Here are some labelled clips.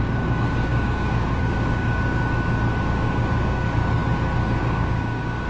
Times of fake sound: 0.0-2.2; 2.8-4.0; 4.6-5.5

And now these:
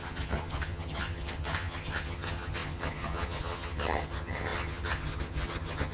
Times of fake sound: 0.0-5.9

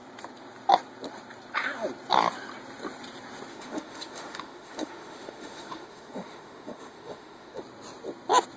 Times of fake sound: 3.5-7.6

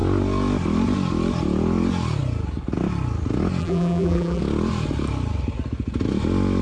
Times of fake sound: 3.6-4.4

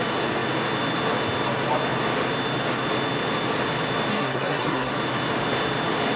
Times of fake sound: 4.1-4.9

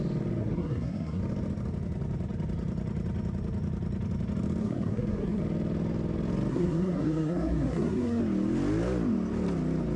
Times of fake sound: 0.4-1.2; 4.6-5.4; 6.5-8.2

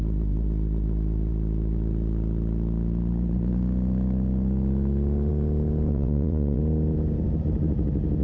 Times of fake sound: 5.9-6.6

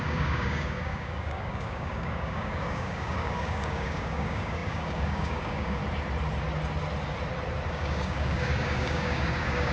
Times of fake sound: 0.0-5.8; 7.7-9.7